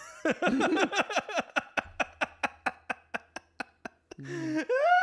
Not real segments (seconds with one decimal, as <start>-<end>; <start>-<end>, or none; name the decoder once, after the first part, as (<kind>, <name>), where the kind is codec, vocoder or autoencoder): none